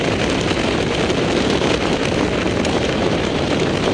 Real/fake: fake